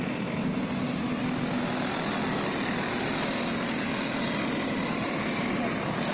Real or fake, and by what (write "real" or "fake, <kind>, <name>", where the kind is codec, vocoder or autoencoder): real